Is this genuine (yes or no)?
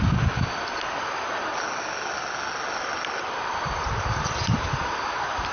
yes